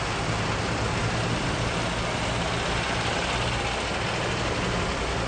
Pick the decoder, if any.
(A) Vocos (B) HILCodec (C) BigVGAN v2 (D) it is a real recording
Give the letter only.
D